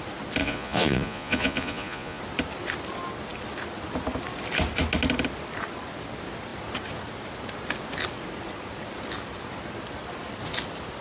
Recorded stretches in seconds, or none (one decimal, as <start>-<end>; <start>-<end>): 0.0-0.4; 2.2-11.0